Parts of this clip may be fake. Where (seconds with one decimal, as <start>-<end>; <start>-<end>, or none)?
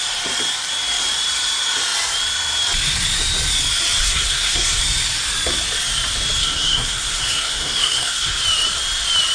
4.0-4.8; 6.4-8.4